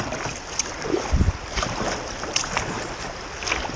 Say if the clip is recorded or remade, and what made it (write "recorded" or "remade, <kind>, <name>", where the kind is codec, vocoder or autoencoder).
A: recorded